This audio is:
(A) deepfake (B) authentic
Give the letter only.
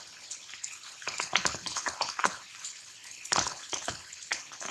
A